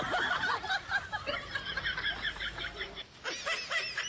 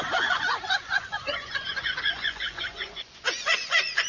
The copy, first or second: second